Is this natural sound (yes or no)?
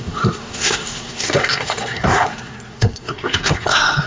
no